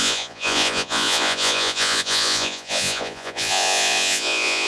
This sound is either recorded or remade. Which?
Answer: remade